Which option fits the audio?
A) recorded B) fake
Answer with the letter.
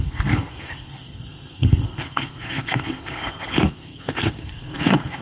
B